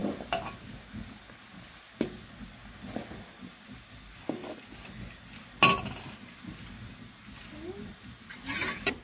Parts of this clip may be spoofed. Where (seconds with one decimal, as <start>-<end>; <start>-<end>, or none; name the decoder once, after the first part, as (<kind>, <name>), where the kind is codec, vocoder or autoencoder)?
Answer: none